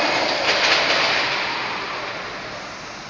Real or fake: real